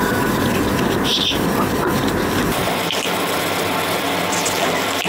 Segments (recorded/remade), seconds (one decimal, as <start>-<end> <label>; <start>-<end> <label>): 0.0-5.1 recorded